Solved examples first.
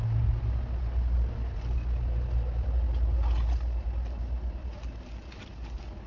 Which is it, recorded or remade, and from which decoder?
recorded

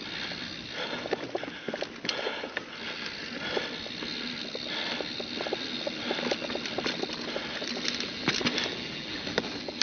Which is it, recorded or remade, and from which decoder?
recorded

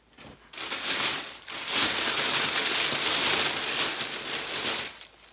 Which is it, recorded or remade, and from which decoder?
recorded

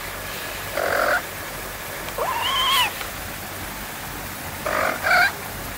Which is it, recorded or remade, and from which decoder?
recorded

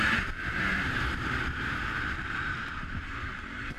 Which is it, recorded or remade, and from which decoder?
remade, vocoder, BigVGAN v2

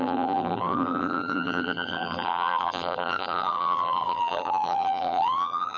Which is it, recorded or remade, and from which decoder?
remade, vocoder, BigVGAN v2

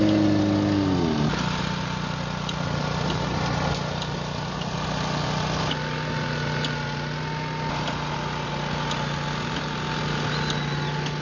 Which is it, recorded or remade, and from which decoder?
recorded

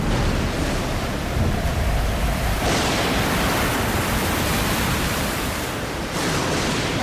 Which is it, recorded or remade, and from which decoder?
remade, vocoder, BigVGAN v2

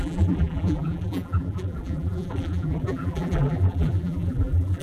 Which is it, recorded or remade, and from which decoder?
remade, vocoder, BigVGAN v2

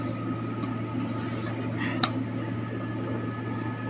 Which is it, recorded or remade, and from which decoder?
recorded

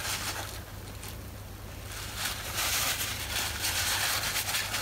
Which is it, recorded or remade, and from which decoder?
recorded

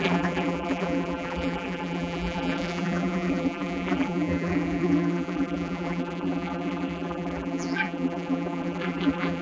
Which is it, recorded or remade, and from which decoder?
remade, vocoder, BigVGAN v2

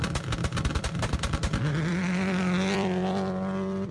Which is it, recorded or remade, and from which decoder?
remade, vocoder, BigVGAN v2